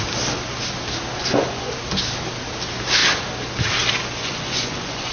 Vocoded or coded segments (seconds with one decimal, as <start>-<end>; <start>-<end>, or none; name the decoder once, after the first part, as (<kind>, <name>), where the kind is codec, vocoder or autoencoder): 1.2-1.7 (vocoder, Vocos); 4.2-5.1